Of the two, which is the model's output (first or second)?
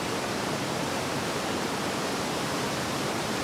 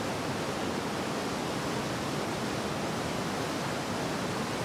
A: first